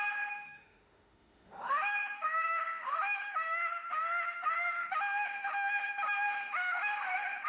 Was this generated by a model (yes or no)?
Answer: yes